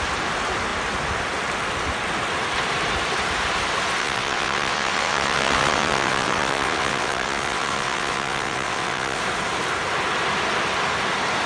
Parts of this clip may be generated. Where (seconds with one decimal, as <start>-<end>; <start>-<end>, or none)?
4.0-9.2

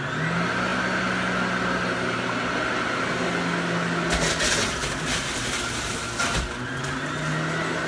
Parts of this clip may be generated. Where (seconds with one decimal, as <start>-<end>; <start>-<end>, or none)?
none

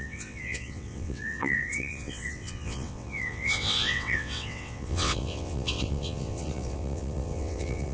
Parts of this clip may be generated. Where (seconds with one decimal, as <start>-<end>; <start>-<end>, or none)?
0.0-7.9

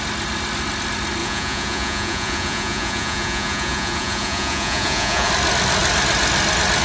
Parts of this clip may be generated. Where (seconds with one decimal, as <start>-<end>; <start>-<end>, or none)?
1.2-5.3